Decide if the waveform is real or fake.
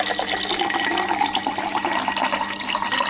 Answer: real